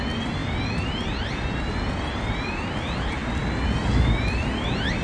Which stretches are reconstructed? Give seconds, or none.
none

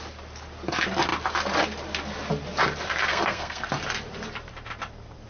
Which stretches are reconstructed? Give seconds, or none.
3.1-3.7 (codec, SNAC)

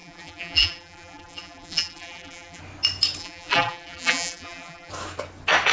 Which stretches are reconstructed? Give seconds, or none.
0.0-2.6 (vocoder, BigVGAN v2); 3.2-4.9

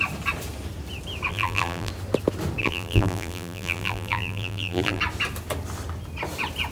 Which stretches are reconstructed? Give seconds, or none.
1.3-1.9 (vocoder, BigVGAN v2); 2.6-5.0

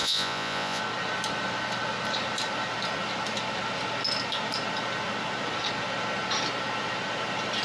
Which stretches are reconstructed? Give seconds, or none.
0.0-0.8 (vocoder, Vocos)

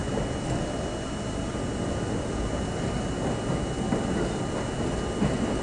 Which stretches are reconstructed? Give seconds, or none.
none

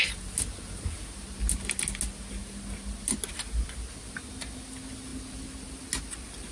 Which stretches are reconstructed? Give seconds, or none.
none